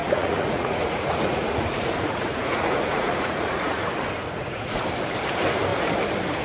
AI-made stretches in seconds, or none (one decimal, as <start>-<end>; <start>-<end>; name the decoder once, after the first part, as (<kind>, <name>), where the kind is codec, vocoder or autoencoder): 0.0-3.8 (vocoder, Vocos); 4.2-4.8